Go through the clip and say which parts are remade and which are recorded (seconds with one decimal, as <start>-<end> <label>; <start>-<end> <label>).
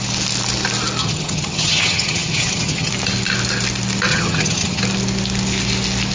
0.0-1.0 recorded; 1.0-2.9 remade; 2.9-4.1 recorded; 4.1-4.8 remade; 4.8-6.1 recorded